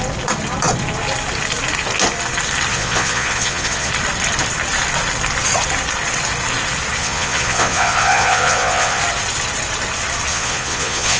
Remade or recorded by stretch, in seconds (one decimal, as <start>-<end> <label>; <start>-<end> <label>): 0.0-2.7 recorded; 2.7-3.9 remade; 3.9-7.0 recorded; 7.0-9.0 remade; 9.0-10.3 recorded; 10.3-11.2 remade